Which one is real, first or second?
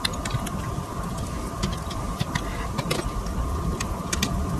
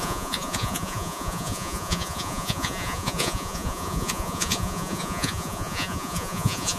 first